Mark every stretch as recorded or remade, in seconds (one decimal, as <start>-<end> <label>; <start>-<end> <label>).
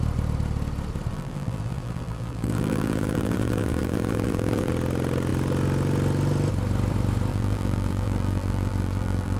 0.0-1.1 recorded; 1.1-4.7 remade; 4.7-7.3 recorded; 7.3-9.4 remade